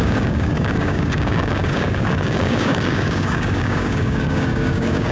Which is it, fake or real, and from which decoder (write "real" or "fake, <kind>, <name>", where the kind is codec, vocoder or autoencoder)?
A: fake, codec, DAC